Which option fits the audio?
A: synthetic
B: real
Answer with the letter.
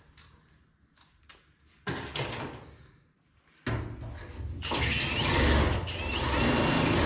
B